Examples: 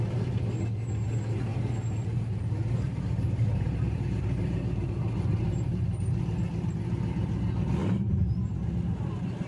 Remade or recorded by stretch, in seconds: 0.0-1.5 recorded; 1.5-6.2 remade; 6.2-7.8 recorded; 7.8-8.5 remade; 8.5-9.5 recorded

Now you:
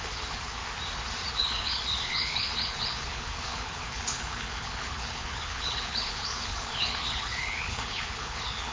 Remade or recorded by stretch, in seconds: 0.0-0.6 remade; 0.6-1.3 recorded; 1.3-8.7 remade

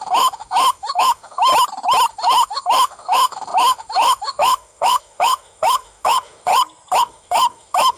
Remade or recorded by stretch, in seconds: 0.0-1.5 remade; 1.5-2.1 recorded; 2.1-6.5 remade; 6.5-7.0 recorded; 7.0-8.0 remade

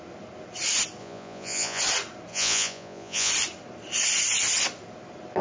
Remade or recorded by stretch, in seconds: 0.0-1.0 recorded; 1.0-1.8 remade; 1.8-2.3 recorded; 2.3-3.3 remade; 3.3-5.4 recorded

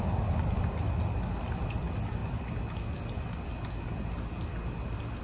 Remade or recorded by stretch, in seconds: 0.0-5.2 recorded

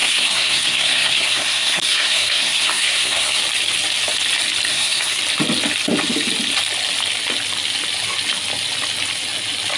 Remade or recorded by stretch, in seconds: 0.0-3.4 remade; 3.4-4.7 recorded; 4.7-5.2 remade; 5.2-9.8 recorded

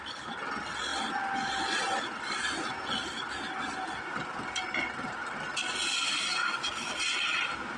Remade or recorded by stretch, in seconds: 0.0-6.4 recorded; 6.4-7.0 remade; 7.0-7.8 recorded